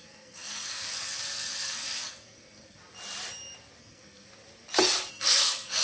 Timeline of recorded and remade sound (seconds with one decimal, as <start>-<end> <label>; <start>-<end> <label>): 0.0-2.8 remade; 2.8-3.8 recorded; 3.8-4.3 remade; 4.3-5.1 recorded; 5.1-5.8 remade